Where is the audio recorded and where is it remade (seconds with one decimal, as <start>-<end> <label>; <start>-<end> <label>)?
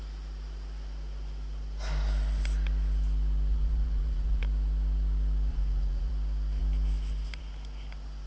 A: 0.0-3.5 recorded; 3.5-4.4 remade; 4.4-5.5 recorded; 5.5-6.1 remade; 6.1-8.3 recorded